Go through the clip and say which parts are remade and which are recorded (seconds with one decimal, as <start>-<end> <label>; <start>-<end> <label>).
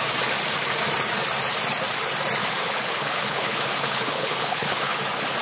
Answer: 0.0-2.4 recorded; 2.4-5.0 remade; 5.0-5.4 recorded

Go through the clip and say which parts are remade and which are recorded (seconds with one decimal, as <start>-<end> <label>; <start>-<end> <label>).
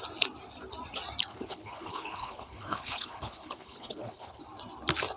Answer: 0.0-1.3 recorded; 1.3-4.4 remade; 4.4-5.2 recorded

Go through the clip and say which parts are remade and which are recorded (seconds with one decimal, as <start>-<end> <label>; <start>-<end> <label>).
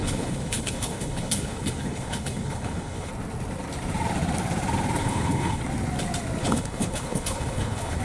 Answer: 0.0-3.1 remade; 3.1-5.0 recorded; 5.0-5.6 remade; 5.6-6.4 recorded; 6.4-8.0 remade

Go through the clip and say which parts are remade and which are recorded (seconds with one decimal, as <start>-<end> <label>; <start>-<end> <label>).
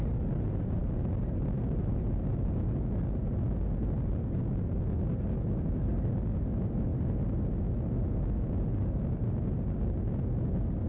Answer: 0.0-10.9 recorded